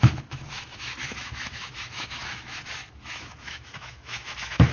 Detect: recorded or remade remade